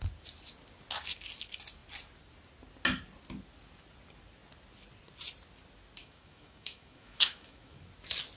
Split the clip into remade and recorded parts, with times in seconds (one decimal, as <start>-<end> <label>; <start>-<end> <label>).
0.0-6.0 recorded; 6.0-7.8 remade; 7.8-8.4 recorded